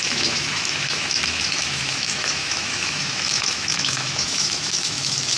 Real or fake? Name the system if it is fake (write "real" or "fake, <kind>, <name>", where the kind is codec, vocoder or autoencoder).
fake, autoencoder, DAC-VAE